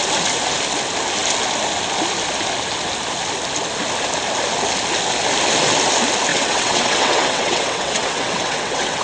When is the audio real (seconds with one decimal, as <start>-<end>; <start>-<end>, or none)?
0.0-6.3